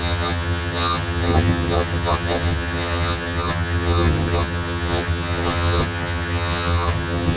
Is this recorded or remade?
remade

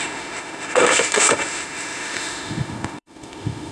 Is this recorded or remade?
remade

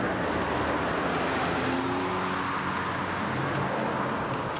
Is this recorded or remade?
recorded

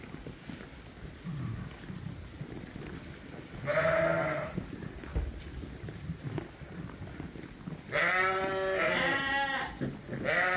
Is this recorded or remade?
recorded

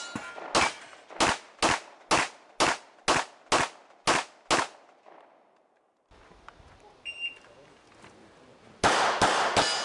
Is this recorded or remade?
recorded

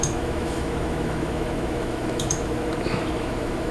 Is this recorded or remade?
remade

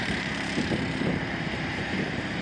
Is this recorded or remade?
remade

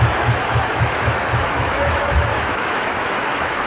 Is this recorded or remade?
remade